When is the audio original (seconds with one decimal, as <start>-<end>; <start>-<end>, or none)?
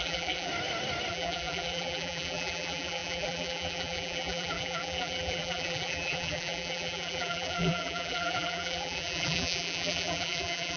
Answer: 0.5-1.1